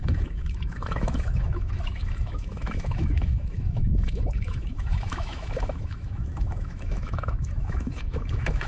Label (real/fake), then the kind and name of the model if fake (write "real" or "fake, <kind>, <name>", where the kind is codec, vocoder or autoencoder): fake, autoencoder, DAC-VAE